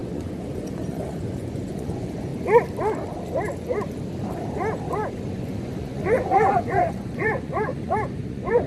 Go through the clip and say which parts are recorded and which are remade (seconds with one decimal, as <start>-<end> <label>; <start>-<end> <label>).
0.0-2.3 remade; 2.3-5.3 recorded; 5.3-8.7 remade